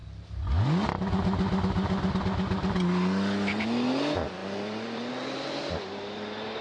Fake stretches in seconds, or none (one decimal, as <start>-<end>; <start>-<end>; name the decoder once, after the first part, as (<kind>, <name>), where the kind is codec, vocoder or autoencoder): 4.4-5.1 (vocoder, BigVGAN v2)